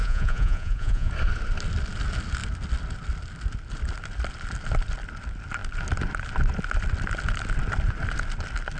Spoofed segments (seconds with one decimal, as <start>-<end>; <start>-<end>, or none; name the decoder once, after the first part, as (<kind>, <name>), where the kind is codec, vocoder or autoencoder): 0.0-1.1 (vocoder, Vocos)